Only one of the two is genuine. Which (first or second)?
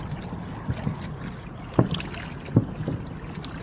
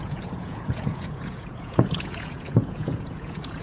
first